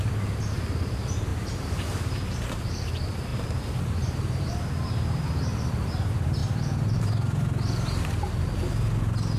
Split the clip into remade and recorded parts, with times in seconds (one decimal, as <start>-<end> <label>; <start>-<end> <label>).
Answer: 0.0-1.3 recorded; 1.3-2.9 remade; 2.9-3.3 recorded; 3.3-5.7 remade; 5.7-6.4 recorded; 6.4-8.4 remade; 8.4-9.4 recorded